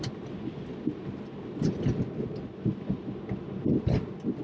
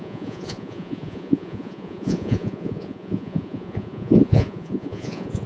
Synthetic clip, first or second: second